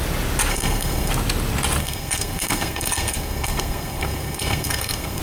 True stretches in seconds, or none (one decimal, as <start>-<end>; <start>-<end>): 0.0-0.5; 1.1-1.8